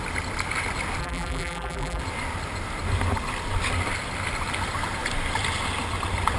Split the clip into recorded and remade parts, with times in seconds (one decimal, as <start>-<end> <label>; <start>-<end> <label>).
0.0-1.0 recorded; 1.0-2.0 remade; 2.0-6.4 recorded